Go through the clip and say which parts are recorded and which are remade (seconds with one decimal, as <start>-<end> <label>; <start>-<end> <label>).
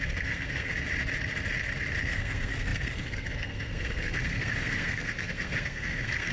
0.0-0.7 remade; 0.7-2.0 recorded; 2.0-6.3 remade